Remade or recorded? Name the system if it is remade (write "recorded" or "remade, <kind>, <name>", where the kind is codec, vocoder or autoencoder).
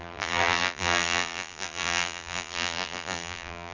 remade, vocoder, BigVGAN v2